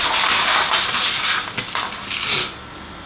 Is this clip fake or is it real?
real